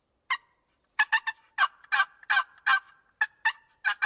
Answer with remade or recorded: recorded